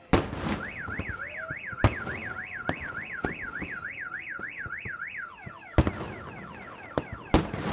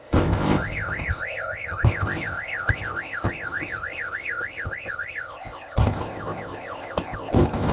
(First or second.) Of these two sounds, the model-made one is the second